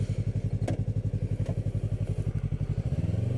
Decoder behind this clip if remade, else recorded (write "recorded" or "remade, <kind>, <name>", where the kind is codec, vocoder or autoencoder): recorded